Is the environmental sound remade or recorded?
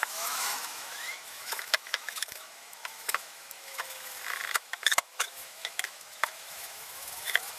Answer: remade